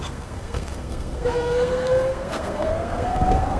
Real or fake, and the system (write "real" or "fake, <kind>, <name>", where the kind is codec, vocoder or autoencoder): fake, codec, SNAC